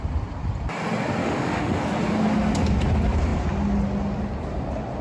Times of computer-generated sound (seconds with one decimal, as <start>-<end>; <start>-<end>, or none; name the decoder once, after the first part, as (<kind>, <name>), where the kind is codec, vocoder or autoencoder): 1.2-1.8 (autoencoder, DAC-VAE)